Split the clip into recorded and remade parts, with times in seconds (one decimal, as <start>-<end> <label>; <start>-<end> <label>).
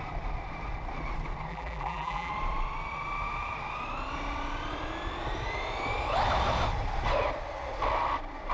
0.0-1.5 recorded; 1.5-2.3 remade; 2.3-8.5 recorded